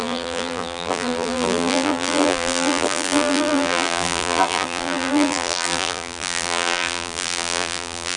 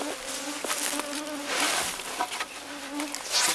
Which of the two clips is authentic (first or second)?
second